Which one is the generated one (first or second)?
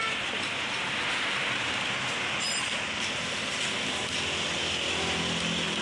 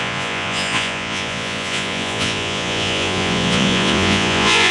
second